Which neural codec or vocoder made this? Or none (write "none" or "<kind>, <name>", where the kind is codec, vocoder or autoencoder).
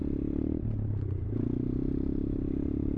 none